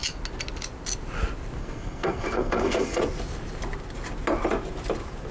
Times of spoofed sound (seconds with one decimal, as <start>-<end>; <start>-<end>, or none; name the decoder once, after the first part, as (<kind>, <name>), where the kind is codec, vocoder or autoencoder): 1.6-3.0 (codec, SNAC)